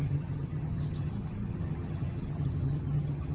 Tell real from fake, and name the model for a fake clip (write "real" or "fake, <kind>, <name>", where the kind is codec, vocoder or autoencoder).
fake, vocoder, HiFi-GAN